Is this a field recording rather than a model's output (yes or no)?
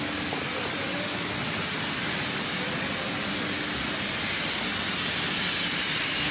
yes